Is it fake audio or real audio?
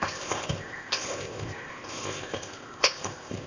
fake